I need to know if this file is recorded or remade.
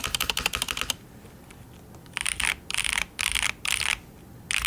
recorded